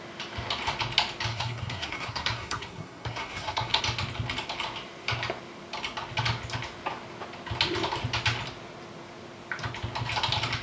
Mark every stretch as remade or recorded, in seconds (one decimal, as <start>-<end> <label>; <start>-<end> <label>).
0.0-1.3 recorded; 1.3-3.8 remade; 3.8-10.6 recorded